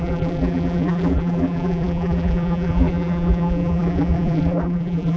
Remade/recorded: remade